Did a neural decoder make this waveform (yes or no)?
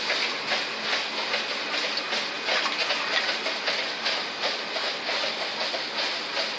no